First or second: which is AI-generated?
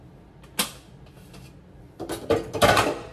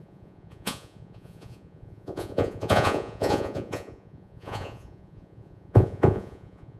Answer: second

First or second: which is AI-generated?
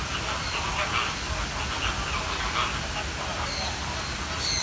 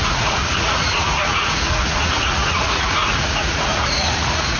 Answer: second